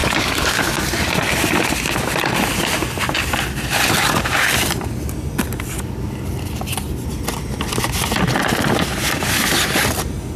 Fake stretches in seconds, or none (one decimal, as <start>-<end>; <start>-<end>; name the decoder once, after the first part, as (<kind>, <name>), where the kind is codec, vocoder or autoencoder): 0.0-0.8 (codec, DAC)